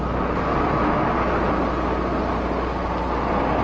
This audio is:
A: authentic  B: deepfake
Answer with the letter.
A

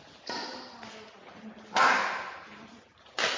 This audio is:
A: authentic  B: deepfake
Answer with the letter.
A